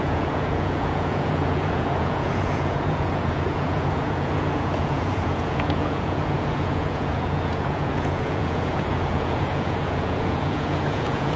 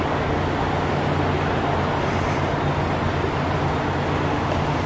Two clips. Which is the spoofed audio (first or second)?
first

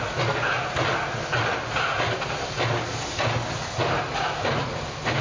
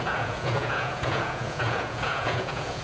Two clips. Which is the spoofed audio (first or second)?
second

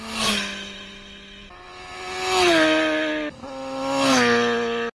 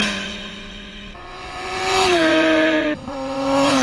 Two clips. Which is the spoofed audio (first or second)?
second